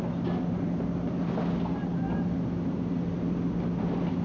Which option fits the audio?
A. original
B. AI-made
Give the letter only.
A